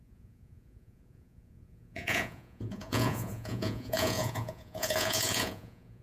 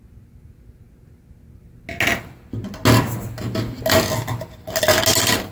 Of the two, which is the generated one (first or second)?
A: first